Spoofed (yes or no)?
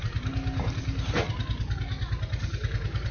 no